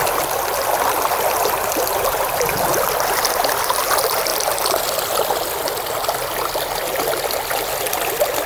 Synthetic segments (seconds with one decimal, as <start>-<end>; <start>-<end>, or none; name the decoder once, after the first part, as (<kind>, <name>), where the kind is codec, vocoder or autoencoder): none